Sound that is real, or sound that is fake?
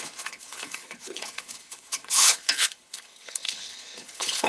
fake